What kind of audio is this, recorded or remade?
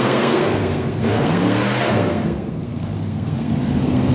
remade